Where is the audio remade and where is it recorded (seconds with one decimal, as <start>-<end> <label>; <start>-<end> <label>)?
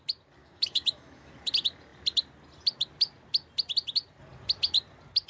0.0-0.4 recorded; 0.4-1.3 remade; 1.3-5.3 recorded